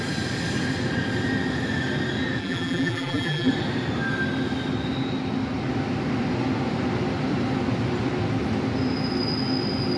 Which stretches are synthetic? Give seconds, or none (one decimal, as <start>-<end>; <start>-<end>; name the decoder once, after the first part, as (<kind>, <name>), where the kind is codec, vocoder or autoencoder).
2.4-3.5 (vocoder, BigVGAN v2)